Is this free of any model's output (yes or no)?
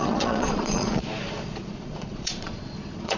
no